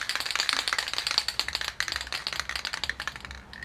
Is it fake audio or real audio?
real